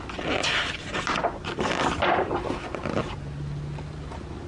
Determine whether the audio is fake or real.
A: real